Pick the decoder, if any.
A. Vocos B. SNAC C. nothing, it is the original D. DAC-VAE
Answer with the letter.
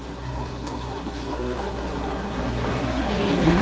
B